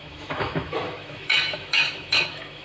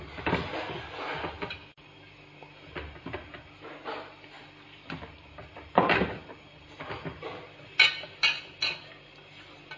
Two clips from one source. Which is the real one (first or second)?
second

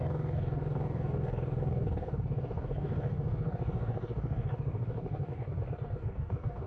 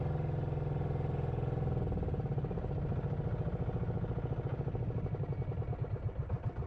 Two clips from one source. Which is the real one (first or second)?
second